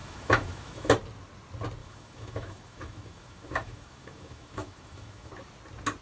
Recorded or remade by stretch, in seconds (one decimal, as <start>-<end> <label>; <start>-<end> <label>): 0.0-0.9 remade; 0.9-1.8 recorded; 1.8-5.3 remade; 5.3-6.0 recorded